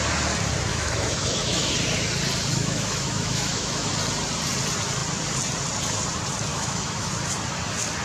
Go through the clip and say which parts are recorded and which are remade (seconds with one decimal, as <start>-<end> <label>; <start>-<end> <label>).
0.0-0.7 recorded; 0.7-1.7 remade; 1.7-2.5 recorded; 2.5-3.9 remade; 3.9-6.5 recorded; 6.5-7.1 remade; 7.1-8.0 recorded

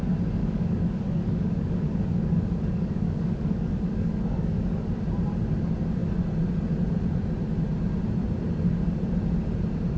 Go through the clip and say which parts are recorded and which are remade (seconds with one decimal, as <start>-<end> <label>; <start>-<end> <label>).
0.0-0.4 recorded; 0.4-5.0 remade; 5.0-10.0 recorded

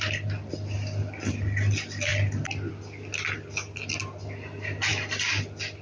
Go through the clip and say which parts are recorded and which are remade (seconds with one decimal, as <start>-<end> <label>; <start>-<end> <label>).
0.0-5.8 recorded

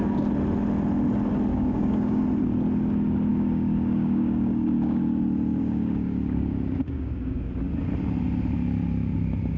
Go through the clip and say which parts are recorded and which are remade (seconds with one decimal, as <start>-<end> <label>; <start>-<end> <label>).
0.0-1.5 recorded; 1.5-2.2 remade; 2.2-3.3 recorded; 3.3-5.0 remade; 5.0-5.6 recorded; 5.6-7.5 remade; 7.5-9.6 recorded